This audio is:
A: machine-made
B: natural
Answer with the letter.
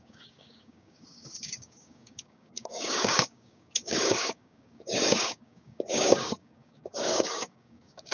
A